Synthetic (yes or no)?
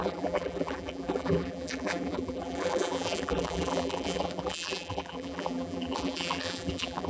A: yes